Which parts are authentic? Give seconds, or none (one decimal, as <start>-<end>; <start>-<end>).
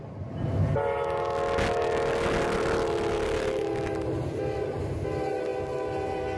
0.0-6.4